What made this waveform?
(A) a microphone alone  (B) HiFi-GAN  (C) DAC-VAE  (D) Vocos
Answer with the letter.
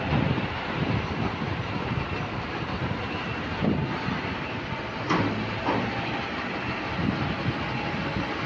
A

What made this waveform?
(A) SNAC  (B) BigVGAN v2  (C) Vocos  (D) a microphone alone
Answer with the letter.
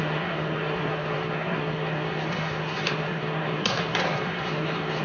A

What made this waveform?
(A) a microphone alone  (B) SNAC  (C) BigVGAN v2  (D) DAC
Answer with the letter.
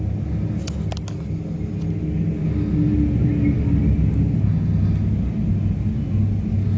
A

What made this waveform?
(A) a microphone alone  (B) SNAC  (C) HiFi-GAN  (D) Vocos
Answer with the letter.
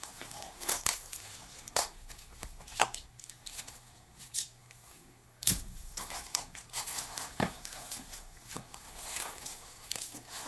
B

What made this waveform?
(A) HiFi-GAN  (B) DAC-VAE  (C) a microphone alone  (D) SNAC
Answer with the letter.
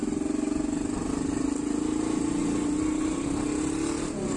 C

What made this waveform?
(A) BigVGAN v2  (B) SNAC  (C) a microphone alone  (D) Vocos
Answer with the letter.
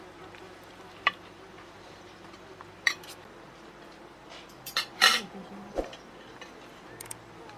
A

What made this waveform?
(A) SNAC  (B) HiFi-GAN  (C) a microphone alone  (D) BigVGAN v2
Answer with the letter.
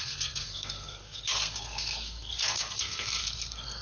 A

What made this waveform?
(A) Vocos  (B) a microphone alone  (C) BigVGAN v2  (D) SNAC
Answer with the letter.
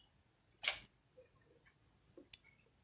B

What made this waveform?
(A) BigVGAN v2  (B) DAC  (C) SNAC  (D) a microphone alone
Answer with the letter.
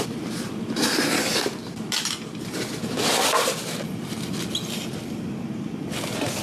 A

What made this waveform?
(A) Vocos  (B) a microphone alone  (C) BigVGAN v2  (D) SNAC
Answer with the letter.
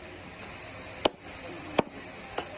B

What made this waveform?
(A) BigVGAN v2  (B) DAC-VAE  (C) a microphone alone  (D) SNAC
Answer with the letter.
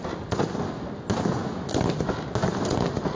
C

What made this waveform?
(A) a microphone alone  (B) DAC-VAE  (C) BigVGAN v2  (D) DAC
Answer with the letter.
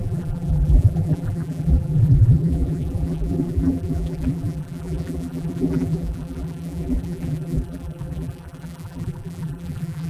C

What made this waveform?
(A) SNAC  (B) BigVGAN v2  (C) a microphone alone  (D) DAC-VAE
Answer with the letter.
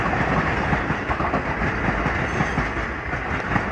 C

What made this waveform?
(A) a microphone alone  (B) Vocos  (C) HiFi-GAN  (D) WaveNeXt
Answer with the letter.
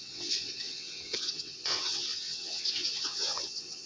D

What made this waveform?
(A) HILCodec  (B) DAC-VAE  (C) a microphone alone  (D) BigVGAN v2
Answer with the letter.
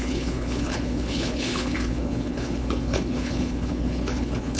A